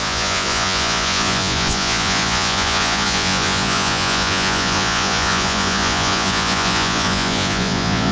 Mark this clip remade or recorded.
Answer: remade